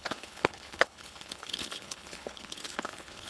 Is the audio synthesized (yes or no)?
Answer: yes